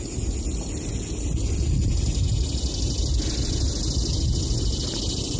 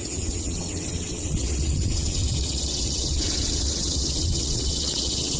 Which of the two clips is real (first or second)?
first